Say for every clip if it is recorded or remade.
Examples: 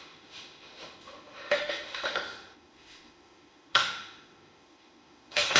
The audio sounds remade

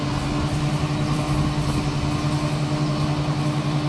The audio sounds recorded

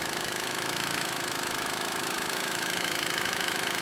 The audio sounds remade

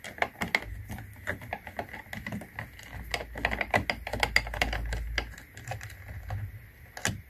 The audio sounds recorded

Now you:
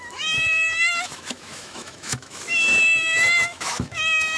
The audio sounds remade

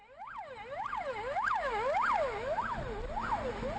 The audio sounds recorded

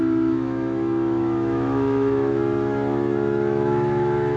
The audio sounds remade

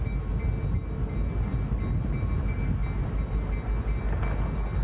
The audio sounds recorded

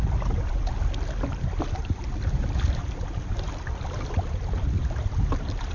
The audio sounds recorded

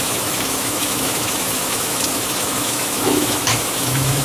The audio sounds remade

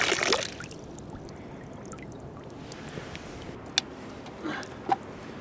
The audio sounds recorded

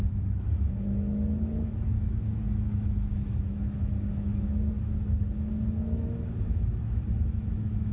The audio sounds remade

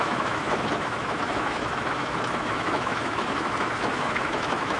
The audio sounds remade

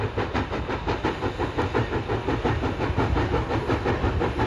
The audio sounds recorded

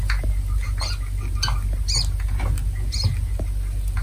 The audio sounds recorded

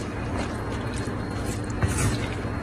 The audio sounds recorded